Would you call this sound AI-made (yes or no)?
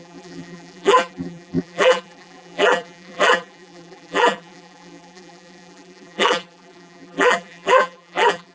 yes